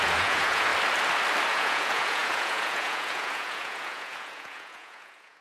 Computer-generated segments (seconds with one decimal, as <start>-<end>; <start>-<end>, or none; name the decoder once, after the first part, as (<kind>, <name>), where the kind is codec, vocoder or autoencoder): 0.0-0.7 (vocoder, Vocos); 1.5-5.4